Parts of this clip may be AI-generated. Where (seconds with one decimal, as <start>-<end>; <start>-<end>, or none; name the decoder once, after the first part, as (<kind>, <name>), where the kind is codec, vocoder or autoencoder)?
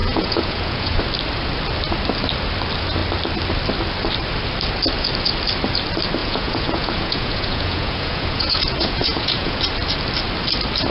0.0-1.0 (vocoder, Vocos); 6.2-9.6